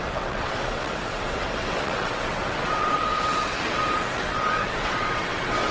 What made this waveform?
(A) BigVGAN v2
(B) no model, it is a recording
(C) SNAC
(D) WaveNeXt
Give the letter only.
D